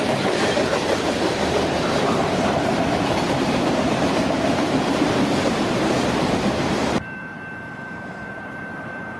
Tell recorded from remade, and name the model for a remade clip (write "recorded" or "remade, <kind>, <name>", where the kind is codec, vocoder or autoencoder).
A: remade, vocoder, BigVGAN v2